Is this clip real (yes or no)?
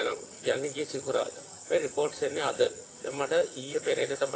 no